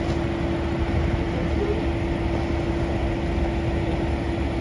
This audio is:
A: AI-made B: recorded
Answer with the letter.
B